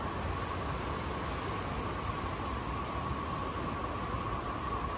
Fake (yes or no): no